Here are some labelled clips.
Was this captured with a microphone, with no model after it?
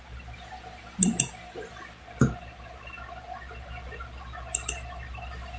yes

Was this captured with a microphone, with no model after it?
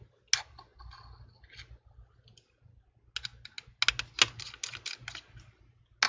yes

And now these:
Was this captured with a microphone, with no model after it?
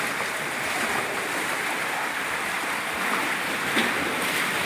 yes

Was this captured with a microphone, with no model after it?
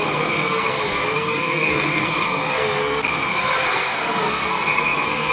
no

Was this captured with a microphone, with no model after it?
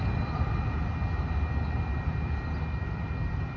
yes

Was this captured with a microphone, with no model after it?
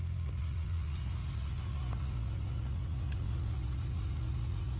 no